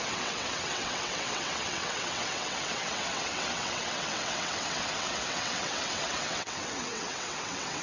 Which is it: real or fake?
fake